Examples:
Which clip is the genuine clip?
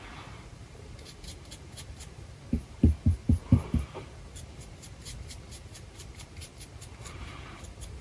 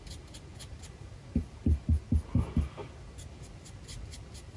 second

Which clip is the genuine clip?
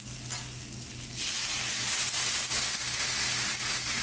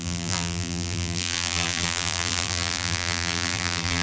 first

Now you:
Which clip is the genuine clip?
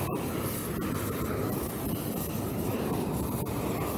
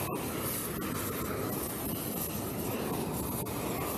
second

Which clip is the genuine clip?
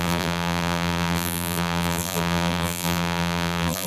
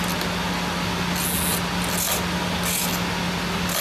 second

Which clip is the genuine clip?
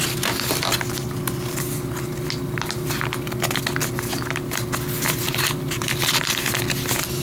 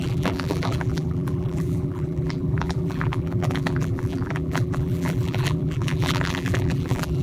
first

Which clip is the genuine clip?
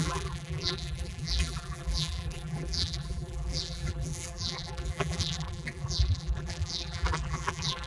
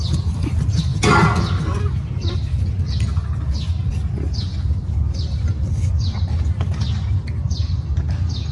second